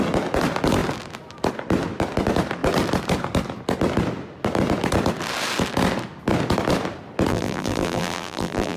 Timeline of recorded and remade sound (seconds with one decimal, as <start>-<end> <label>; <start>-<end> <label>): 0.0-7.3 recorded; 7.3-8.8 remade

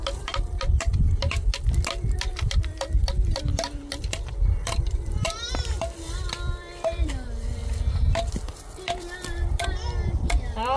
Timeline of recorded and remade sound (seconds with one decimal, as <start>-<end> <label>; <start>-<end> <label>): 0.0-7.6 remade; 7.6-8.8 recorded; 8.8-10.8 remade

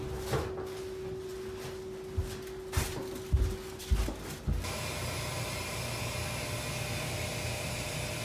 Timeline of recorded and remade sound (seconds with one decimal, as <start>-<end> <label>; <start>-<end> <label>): 0.0-8.2 recorded

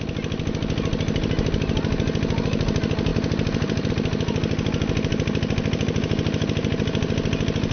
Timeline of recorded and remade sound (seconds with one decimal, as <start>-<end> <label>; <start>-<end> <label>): 0.0-3.1 recorded; 3.1-3.9 remade; 3.9-7.7 recorded